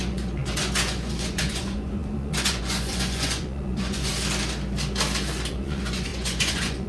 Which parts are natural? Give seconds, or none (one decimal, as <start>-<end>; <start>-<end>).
4.1-5.5